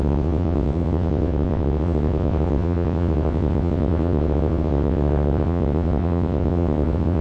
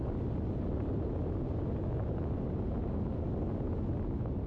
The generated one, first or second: first